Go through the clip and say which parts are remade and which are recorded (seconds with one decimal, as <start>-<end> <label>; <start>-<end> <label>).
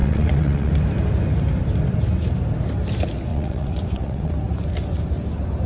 0.0-0.7 remade; 0.7-3.3 recorded; 3.3-4.3 remade; 4.3-5.7 recorded